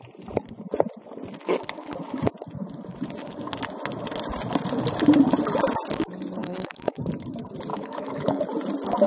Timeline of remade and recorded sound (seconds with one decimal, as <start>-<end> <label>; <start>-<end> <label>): 0.0-6.4 recorded; 6.4-7.0 remade; 7.0-7.7 recorded; 7.7-8.4 remade; 8.4-9.1 recorded